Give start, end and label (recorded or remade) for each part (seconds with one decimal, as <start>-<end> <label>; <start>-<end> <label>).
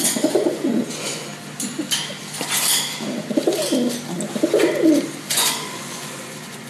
0.0-1.3 remade; 1.3-5.3 recorded; 5.3-6.7 remade